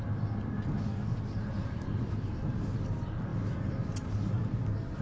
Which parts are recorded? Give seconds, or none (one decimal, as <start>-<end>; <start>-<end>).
0.0-5.0